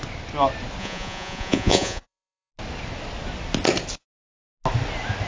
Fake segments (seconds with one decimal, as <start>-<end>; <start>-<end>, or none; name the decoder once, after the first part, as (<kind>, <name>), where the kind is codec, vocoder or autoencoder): 0.8-2.5 (vocoder, Vocos)